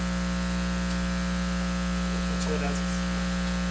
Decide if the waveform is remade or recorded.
recorded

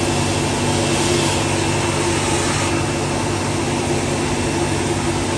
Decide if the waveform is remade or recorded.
recorded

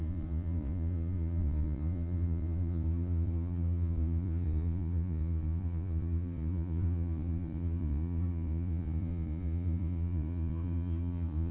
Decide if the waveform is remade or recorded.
remade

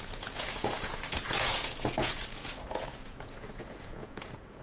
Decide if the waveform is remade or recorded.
remade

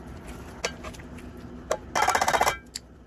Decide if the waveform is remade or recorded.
recorded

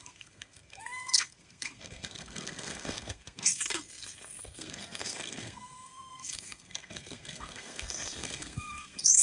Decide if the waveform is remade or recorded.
remade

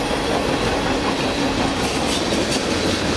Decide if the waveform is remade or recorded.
recorded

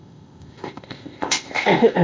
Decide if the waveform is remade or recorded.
remade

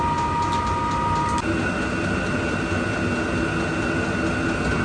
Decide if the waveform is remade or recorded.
recorded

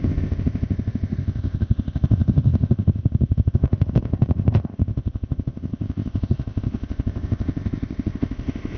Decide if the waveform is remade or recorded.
remade